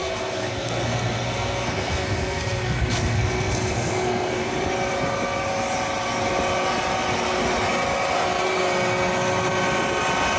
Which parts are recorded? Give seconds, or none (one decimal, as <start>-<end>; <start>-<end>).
4.5-10.4